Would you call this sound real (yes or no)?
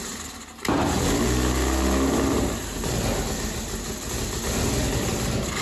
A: yes